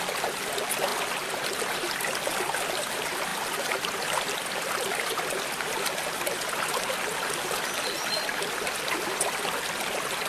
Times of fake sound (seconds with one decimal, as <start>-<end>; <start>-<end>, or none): none